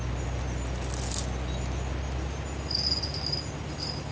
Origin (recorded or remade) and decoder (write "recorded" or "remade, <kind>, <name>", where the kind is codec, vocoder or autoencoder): recorded